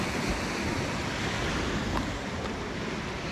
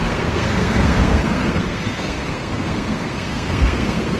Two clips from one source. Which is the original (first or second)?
first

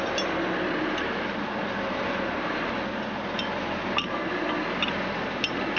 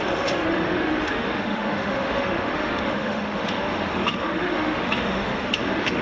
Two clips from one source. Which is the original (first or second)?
first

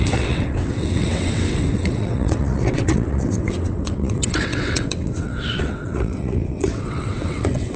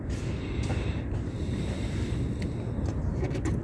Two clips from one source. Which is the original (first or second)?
second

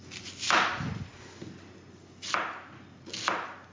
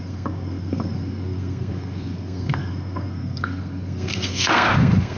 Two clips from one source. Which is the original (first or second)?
first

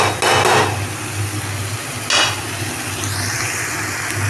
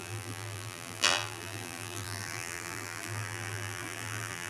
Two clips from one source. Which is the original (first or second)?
first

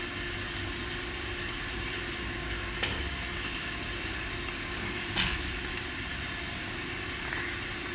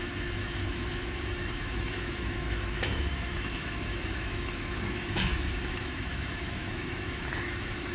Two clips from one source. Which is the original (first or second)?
first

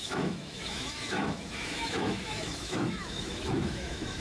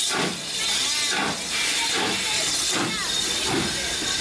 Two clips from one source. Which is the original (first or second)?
second